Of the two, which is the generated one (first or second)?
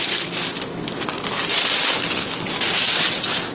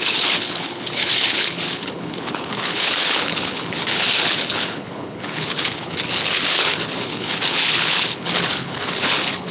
second